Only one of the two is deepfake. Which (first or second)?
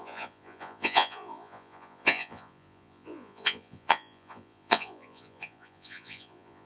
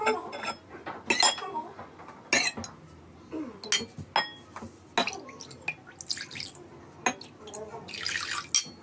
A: first